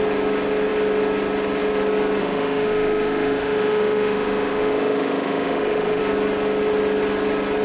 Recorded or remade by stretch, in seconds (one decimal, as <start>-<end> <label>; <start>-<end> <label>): 0.0-2.2 recorded; 2.2-6.0 remade; 6.0-7.6 recorded